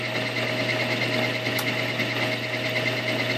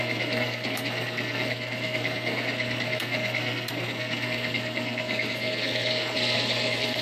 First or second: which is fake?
second